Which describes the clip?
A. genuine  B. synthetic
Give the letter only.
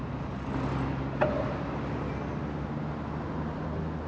A